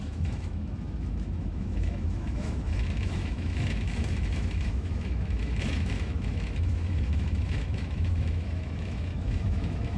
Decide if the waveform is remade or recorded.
remade